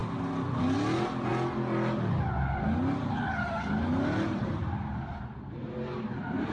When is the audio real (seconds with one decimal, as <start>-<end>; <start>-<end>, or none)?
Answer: 0.0-6.5